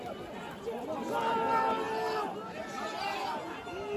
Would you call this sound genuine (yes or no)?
yes